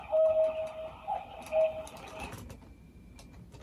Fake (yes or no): no